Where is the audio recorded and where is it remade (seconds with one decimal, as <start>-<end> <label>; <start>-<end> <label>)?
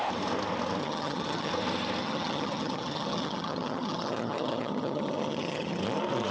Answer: 0.0-0.8 recorded; 0.8-1.5 remade; 1.5-2.0 recorded; 2.0-5.8 remade; 5.8-6.3 recorded